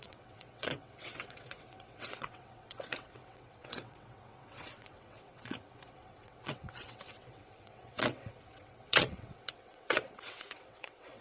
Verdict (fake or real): fake